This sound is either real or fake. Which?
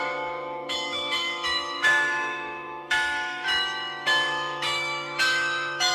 fake